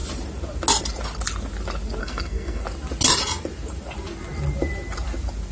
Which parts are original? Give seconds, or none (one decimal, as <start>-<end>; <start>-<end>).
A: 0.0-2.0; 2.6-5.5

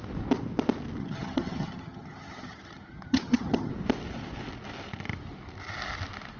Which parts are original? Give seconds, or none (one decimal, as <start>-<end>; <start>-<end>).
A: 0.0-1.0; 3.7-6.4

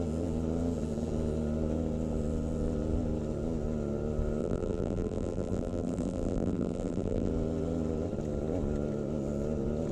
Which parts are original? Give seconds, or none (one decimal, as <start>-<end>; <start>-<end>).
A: 0.0-4.4; 7.3-9.9

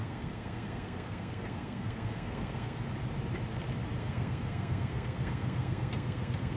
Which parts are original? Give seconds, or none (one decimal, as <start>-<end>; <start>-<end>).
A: 2.8-4.0

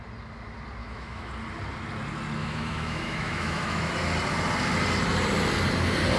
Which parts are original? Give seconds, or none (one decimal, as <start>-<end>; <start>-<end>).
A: 0.0-0.8; 1.3-2.4; 3.9-6.2

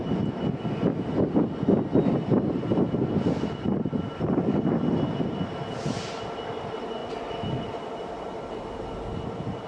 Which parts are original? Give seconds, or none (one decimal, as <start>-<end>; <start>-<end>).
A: 0.0-9.7